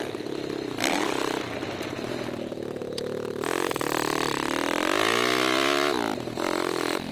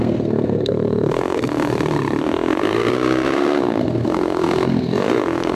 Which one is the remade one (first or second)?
second